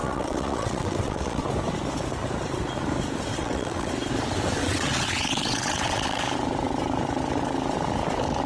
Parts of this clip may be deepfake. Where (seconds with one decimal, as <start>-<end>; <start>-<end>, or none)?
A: 0.0-1.5; 3.3-3.9; 4.6-6.2